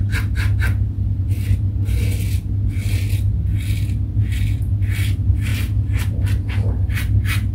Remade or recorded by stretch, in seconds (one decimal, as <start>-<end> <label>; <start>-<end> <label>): 0.0-7.5 recorded

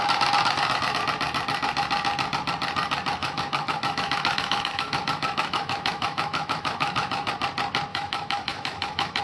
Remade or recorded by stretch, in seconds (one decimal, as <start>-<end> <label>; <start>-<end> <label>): 0.0-3.2 recorded; 3.2-7.3 remade; 7.3-7.9 recorded; 7.9-9.2 remade